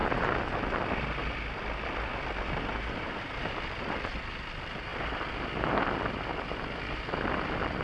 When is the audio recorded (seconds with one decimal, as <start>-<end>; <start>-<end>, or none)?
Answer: 0.0-7.8